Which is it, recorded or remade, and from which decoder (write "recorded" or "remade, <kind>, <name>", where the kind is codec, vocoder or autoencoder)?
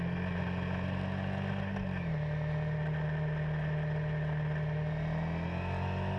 recorded